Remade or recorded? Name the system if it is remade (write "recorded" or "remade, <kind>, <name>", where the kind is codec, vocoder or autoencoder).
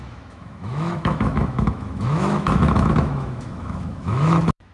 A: remade, autoencoder, DAC-VAE